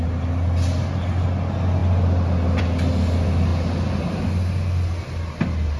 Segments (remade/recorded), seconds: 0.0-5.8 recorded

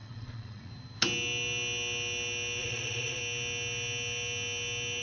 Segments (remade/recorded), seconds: 0.0-0.7 remade; 0.7-2.6 recorded; 2.6-3.2 remade; 3.2-5.0 recorded

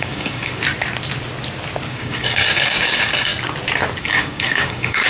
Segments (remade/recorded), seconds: 0.0-0.6 remade; 0.6-1.9 recorded; 1.9-3.3 remade; 3.3-4.0 recorded; 4.0-5.1 remade

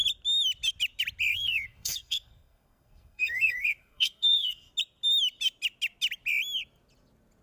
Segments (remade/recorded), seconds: 0.0-1.3 recorded; 1.3-4.7 remade; 4.7-7.4 recorded

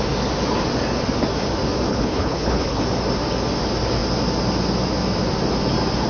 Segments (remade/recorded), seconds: 0.0-1.9 recorded; 1.9-2.8 remade; 2.8-6.1 recorded

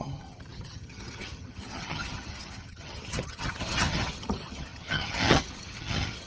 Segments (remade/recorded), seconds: 0.0-6.3 remade

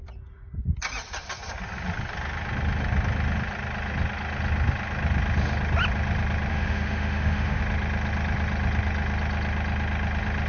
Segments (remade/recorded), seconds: 0.0-6.5 recorded; 6.5-7.6 remade; 7.6-10.5 recorded

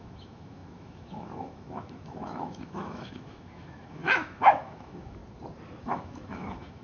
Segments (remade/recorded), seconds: 0.0-5.2 remade; 5.2-5.8 recorded; 5.8-6.8 remade